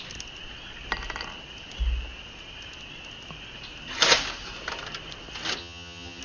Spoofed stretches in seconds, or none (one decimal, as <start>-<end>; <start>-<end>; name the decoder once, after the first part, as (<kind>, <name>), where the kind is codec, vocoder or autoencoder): 5.6-6.2 (vocoder, HiFi-GAN)